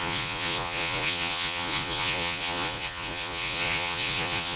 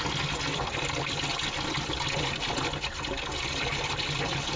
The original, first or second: second